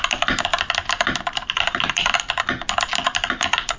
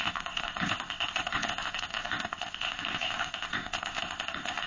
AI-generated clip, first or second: second